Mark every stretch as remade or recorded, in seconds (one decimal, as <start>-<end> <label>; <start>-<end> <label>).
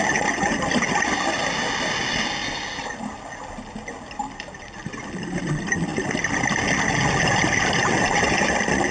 0.0-8.9 recorded